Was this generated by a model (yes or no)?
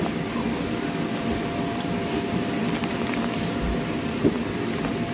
yes